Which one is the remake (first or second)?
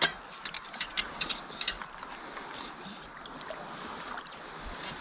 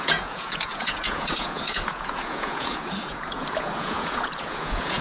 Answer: second